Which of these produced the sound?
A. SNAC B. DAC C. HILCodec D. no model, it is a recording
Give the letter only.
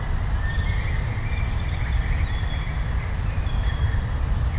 D